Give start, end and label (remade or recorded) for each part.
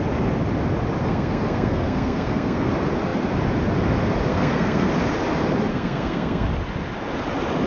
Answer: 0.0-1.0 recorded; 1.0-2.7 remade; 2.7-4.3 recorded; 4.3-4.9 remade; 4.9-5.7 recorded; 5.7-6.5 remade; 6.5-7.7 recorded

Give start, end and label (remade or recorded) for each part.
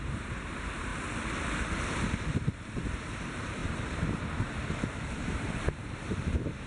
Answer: 0.0-0.9 remade; 0.9-1.8 recorded; 1.8-6.7 remade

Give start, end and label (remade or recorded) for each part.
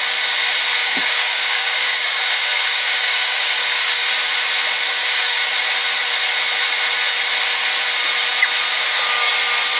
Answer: 0.0-0.8 recorded; 0.8-4.1 remade; 4.1-5.0 recorded; 5.0-5.5 remade; 5.5-8.7 recorded; 8.7-9.3 remade; 9.3-9.8 recorded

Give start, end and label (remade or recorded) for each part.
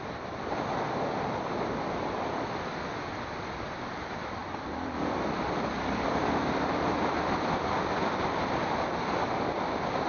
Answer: 0.0-4.4 recorded; 4.4-8.1 remade; 8.1-10.1 recorded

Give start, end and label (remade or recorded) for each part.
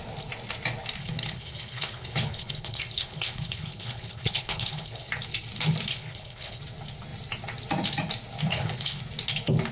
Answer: 0.0-1.0 recorded; 1.0-5.1 remade; 5.1-5.9 recorded; 5.9-6.6 remade; 6.6-8.5 recorded; 8.5-9.0 remade; 9.0-9.7 recorded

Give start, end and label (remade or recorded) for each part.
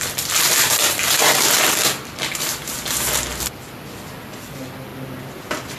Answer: 0.0-2.6 remade; 2.6-3.4 recorded; 3.4-4.9 remade; 4.9-5.8 recorded